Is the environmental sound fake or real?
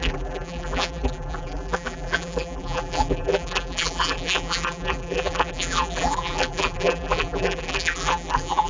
fake